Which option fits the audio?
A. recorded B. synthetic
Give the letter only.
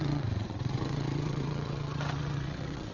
B